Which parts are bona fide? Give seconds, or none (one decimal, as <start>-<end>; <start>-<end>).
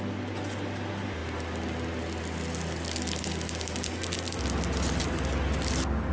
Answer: 0.0-6.1